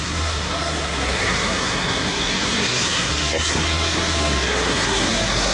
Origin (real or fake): fake